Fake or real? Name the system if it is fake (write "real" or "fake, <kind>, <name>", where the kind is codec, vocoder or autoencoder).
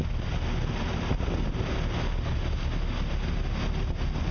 real